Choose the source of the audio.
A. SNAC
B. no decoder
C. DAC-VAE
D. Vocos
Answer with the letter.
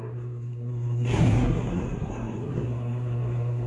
A